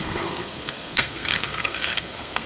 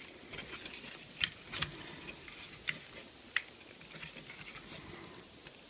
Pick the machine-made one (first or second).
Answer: first